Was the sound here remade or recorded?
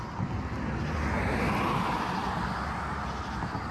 recorded